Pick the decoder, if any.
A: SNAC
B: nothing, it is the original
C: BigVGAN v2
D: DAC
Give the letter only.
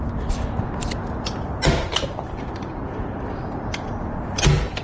B